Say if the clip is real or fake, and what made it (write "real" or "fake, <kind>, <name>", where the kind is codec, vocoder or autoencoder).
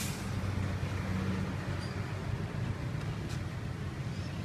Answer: real